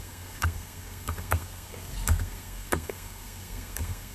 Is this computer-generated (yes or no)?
yes